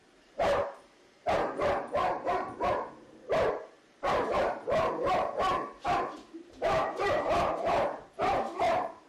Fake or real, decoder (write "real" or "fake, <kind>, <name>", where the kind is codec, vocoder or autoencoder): fake, vocoder, BigVGAN v2